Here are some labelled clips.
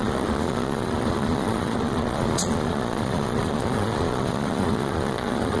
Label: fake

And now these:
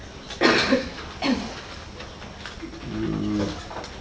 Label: real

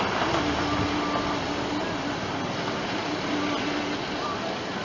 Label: real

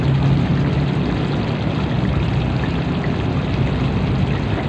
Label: real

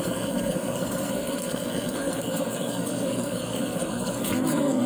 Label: fake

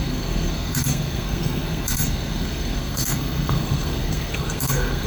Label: fake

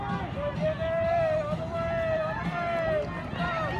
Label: real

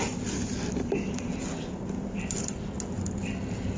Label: real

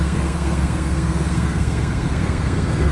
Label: fake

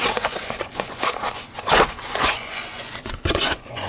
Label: fake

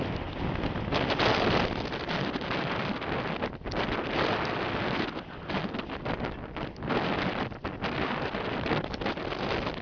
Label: real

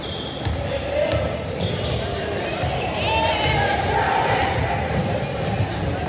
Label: real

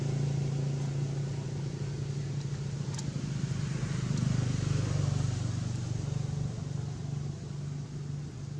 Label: real